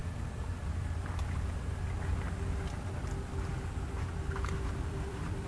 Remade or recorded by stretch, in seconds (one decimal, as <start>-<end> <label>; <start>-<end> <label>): 0.0-0.6 recorded; 0.6-1.0 remade; 1.0-3.0 recorded; 3.0-3.5 remade; 3.5-4.9 recorded; 4.9-5.5 remade